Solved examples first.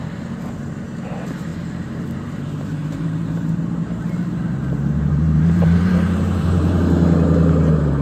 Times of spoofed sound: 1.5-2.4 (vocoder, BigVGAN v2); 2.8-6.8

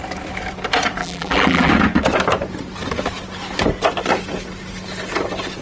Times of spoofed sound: 1.0-1.7 (vocoder, BigVGAN v2)

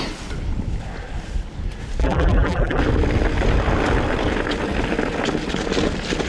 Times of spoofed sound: 2.0-2.8 (vocoder, BigVGAN v2)